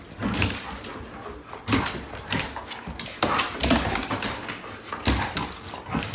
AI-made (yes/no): no